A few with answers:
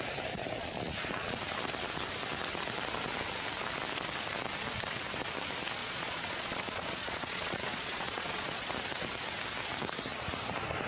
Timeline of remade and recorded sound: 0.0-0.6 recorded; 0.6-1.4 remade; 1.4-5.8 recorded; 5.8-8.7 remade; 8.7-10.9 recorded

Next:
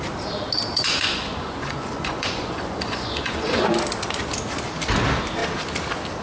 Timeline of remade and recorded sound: 0.0-0.7 recorded; 0.7-3.7 remade; 3.7-6.2 recorded

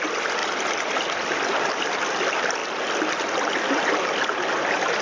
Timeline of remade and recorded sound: 0.0-5.0 recorded